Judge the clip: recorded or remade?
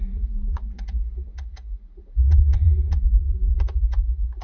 remade